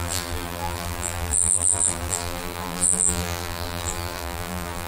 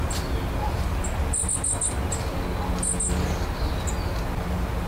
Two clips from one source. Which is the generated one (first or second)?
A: first